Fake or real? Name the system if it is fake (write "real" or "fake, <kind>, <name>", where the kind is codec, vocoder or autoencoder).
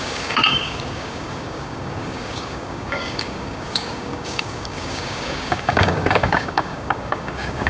fake, codec, DAC